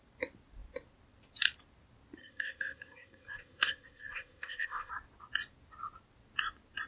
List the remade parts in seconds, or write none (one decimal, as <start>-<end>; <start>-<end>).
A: 2.2-4.9